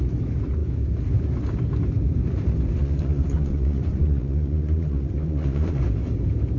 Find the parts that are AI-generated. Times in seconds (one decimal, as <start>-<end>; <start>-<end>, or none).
2.8-5.8